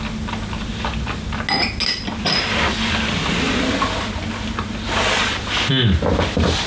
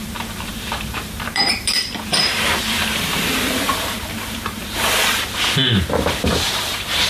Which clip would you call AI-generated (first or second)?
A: second